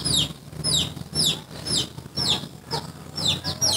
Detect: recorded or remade recorded